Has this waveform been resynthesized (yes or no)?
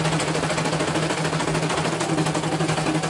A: no